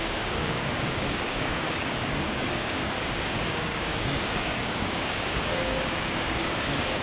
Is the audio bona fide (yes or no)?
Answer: no